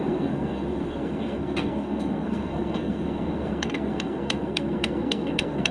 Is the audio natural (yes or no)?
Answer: no